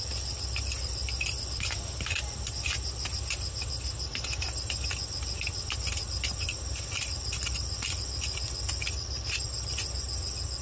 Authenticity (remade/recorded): recorded